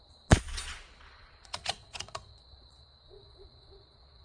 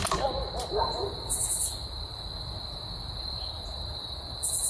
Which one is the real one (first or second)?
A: second